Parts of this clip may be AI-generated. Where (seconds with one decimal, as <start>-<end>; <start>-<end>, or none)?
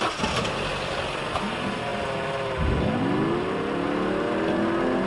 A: none